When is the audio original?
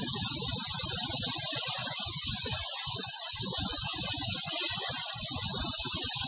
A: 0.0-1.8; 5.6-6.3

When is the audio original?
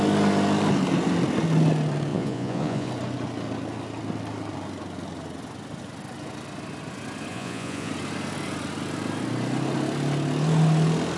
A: 0.0-2.1; 2.9-7.3; 7.9-11.2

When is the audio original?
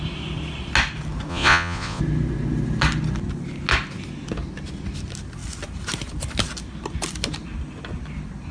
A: 0.0-1.3; 2.0-8.5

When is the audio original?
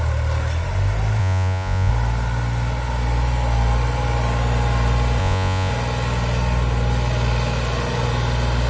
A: 0.0-1.2; 1.9-5.2; 5.7-8.7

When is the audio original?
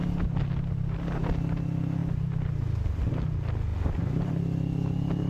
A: 0.0-5.3